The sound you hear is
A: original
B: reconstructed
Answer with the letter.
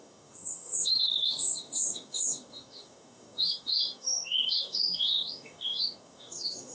B